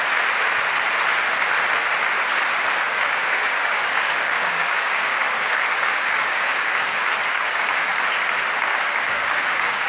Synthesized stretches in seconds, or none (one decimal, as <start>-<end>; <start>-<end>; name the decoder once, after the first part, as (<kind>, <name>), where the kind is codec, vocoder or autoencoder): 2.9-7.9 (codec, DAC); 8.7-9.9